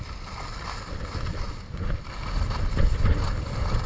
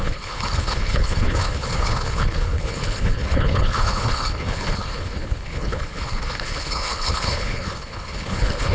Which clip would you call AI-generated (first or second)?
second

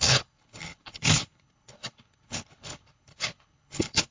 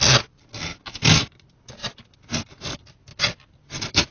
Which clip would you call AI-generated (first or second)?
first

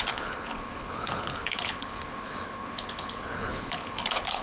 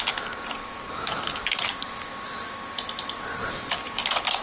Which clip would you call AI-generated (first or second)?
first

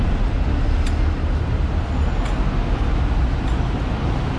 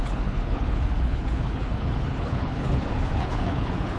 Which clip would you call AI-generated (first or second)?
second